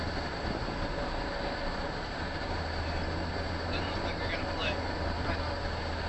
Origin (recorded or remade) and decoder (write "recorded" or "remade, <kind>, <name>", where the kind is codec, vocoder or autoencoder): recorded